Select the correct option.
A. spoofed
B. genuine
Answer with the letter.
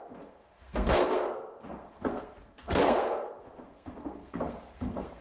A